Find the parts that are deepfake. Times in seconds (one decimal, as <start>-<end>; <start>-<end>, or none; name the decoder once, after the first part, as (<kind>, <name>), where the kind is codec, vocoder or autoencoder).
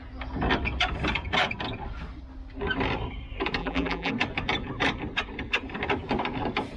3.6-4.1 (vocoder, BigVGAN v2)